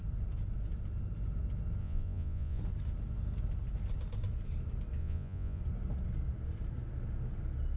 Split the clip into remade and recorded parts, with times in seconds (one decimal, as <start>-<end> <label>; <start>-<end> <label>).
0.0-1.8 recorded; 1.8-2.6 remade; 2.6-5.0 recorded; 5.0-5.6 remade; 5.6-7.8 recorded

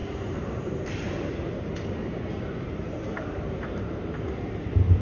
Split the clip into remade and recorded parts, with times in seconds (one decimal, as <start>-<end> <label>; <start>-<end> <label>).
0.0-5.0 remade

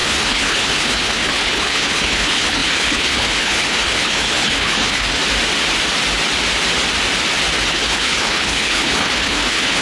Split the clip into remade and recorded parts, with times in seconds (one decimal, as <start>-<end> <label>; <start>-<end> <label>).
0.0-5.2 remade; 5.2-7.7 recorded; 7.7-9.8 remade

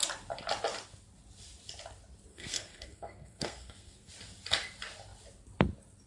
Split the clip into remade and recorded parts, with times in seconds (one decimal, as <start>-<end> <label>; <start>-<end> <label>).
0.0-2.3 recorded; 2.3-4.1 remade; 4.1-6.1 recorded

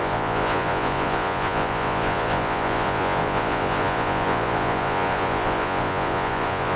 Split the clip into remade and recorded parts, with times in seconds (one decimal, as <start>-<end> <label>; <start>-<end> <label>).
0.0-6.8 remade

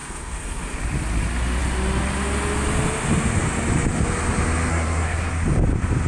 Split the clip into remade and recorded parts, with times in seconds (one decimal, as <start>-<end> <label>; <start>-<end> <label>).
0.0-0.8 remade; 0.8-4.7 recorded; 4.7-5.3 remade; 5.3-6.1 recorded

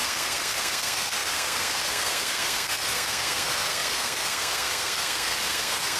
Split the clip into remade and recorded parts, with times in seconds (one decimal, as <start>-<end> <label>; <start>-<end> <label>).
0.0-6.0 remade